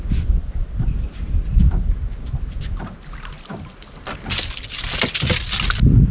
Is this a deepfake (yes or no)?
no